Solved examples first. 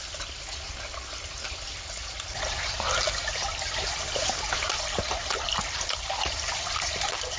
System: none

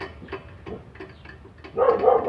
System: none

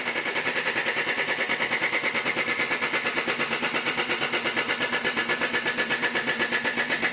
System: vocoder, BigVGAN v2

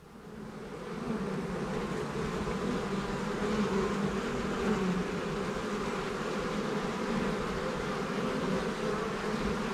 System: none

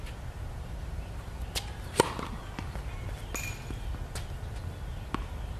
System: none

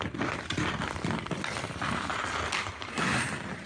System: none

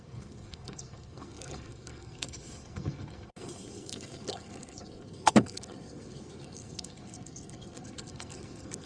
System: codec, SNAC